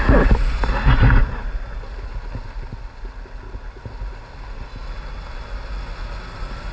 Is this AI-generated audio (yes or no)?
no